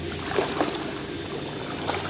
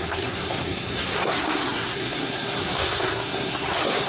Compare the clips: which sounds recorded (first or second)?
first